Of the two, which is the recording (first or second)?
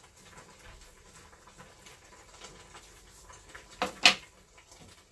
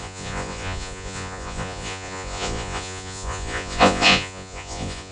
first